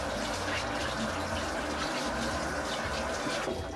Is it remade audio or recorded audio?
recorded